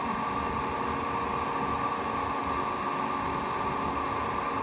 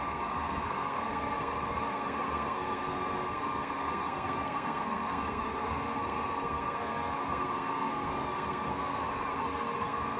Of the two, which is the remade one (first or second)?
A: second